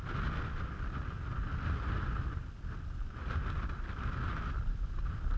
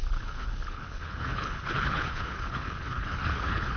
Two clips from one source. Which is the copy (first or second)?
second